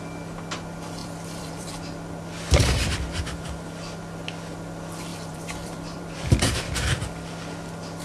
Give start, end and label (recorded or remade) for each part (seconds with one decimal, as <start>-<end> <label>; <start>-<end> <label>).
0.0-1.0 recorded; 1.0-1.7 remade; 1.7-5.1 recorded; 5.1-6.5 remade; 6.5-8.0 recorded

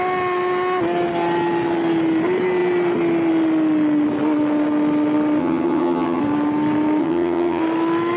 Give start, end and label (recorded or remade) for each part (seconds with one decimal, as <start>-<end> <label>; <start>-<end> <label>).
0.0-5.4 recorded; 5.4-6.2 remade; 6.2-7.0 recorded; 7.0-7.6 remade; 7.6-8.2 recorded

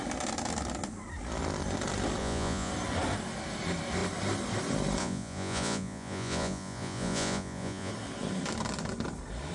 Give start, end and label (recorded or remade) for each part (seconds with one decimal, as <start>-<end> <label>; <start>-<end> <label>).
0.0-2.2 recorded; 2.2-2.7 remade; 2.7-5.0 recorded; 5.0-7.9 remade; 7.9-9.5 recorded

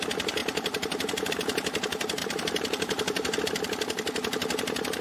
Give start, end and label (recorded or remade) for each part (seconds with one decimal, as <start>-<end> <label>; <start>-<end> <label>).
0.0-0.4 recorded; 0.4-1.3 remade; 1.3-2.2 recorded; 2.2-3.4 remade; 3.4-5.0 recorded

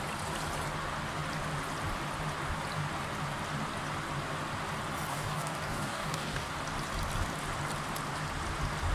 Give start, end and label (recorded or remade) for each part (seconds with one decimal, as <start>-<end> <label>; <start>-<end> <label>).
0.0-5.1 recorded; 5.1-6.5 remade; 6.5-8.9 recorded

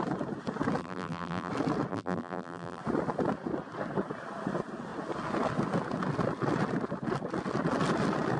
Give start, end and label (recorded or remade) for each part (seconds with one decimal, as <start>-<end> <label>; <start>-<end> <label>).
0.0-0.8 recorded; 0.8-1.5 remade; 1.5-1.9 recorded; 1.9-2.8 remade; 2.8-8.4 recorded